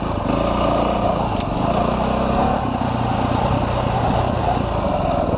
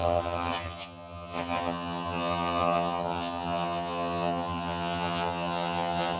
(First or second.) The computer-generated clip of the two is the second